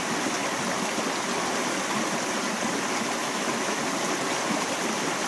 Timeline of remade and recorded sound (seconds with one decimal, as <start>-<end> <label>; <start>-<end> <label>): 0.0-3.2 recorded; 3.2-3.8 remade; 3.8-5.3 recorded

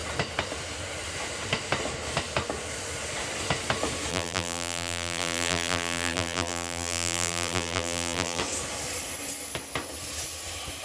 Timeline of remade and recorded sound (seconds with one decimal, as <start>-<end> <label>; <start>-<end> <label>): 0.0-4.1 recorded; 4.1-8.4 remade; 8.4-10.8 recorded

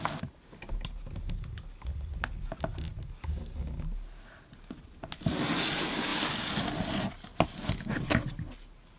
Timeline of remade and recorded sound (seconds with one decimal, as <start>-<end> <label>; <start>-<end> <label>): 0.0-9.0 recorded

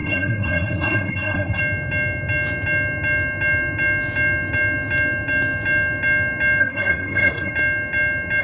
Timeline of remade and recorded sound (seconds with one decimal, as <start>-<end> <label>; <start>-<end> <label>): 0.0-1.6 remade; 1.6-6.6 recorded; 6.6-7.5 remade; 7.5-8.4 recorded

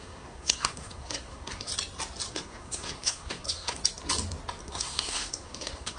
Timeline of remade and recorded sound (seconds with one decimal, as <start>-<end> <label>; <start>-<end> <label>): 0.0-1.7 remade; 1.7-2.3 recorded; 2.3-3.8 remade; 3.8-4.6 recorded; 4.6-6.0 remade

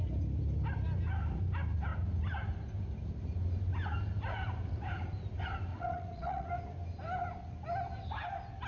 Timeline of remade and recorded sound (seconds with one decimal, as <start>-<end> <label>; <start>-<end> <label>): 0.0-5.7 recorded; 5.7-6.5 remade; 6.5-8.7 recorded